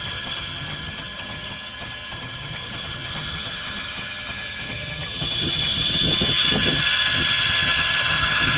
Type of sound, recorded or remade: remade